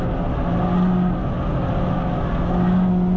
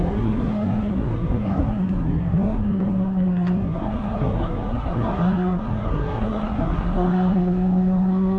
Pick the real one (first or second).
first